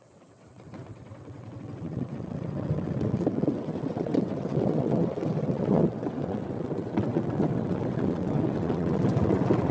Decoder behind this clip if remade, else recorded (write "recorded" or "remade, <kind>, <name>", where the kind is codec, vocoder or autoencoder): remade, vocoder, WaveNeXt